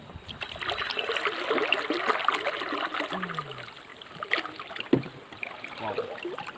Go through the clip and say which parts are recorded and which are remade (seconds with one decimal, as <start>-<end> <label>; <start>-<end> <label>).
0.0-6.6 recorded